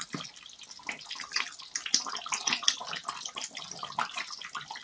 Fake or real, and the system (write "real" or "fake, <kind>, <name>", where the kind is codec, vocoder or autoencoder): real